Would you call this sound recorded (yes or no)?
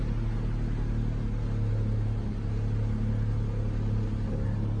yes